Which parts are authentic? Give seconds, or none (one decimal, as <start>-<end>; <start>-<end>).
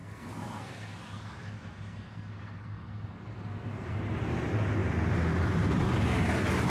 4.0-6.7